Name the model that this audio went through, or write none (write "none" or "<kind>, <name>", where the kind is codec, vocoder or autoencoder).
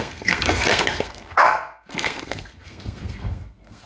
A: codec, SNAC